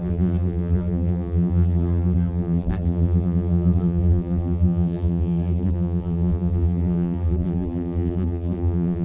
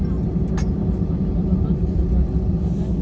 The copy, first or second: first